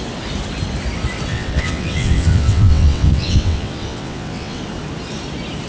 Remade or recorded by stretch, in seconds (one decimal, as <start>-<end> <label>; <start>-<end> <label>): 0.0-1.3 recorded; 1.3-4.6 remade; 4.6-5.7 recorded